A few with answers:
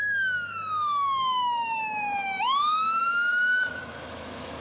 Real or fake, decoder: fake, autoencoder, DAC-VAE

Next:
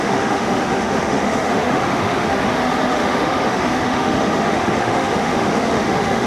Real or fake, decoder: fake, autoencoder, DAC-VAE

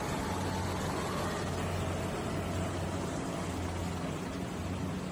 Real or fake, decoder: real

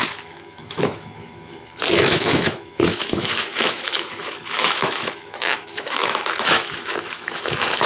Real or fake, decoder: fake, autoencoder, DAC-VAE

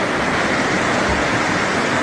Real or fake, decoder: real